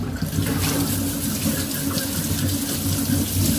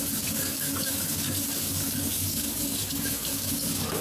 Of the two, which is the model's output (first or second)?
second